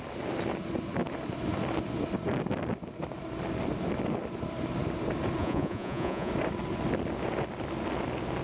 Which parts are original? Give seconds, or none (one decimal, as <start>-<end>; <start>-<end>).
0.0-5.4; 6.3-8.4

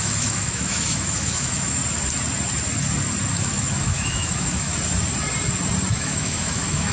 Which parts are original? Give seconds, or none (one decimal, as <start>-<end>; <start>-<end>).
1.8-3.3; 4.7-5.9

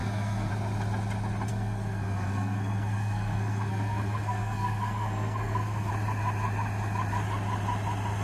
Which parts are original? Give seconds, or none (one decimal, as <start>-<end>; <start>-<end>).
0.5-1.5; 5.9-8.2

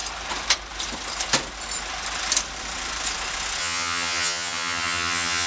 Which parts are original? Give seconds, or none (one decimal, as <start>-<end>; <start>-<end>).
0.0-3.6